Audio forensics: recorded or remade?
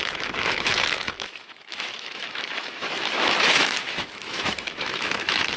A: remade